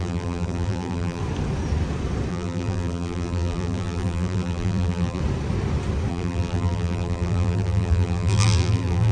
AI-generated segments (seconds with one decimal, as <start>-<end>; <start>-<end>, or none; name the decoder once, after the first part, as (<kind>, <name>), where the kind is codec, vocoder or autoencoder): 0.0-1.2 (vocoder, BigVGAN v2); 2.3-5.2; 6.1-9.1